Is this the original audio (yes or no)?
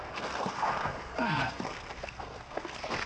no